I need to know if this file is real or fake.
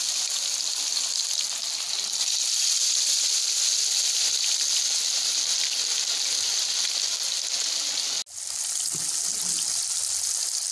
real